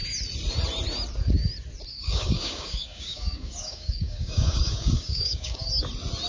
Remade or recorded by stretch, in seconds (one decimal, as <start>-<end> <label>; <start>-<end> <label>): 0.0-1.9 recorded; 1.9-5.7 remade; 5.7-6.3 recorded